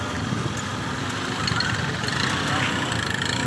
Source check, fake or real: real